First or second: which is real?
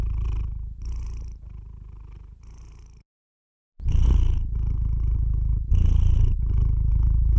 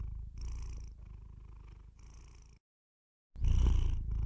second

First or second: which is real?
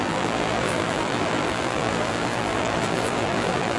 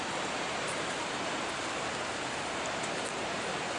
second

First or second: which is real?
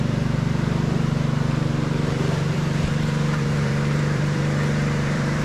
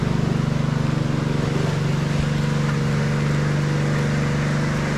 second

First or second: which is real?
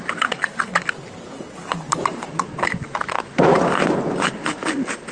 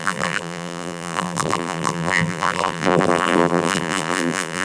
first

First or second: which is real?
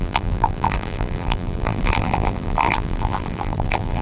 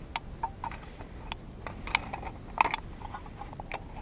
second